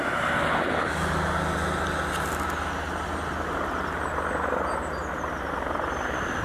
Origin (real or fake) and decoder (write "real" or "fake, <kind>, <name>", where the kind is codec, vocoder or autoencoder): real